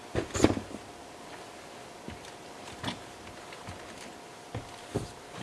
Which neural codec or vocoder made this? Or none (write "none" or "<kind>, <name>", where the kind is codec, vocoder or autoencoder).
none